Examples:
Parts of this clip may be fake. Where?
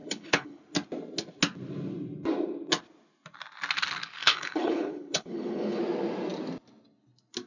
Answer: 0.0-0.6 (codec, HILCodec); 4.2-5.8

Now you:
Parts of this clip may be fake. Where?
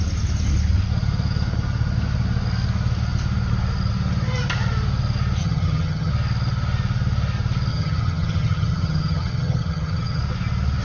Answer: 5.4-6.1 (vocoder, HiFi-GAN); 7.7-10.2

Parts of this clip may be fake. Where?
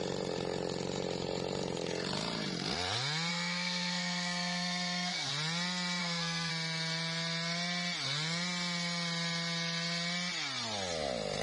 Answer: 3.3-5.3 (codec, SNAC); 6.0-6.5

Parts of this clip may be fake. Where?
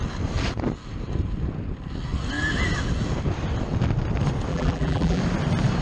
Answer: 4.5-5.2 (vocoder, BigVGAN v2)